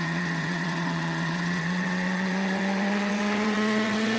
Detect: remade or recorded remade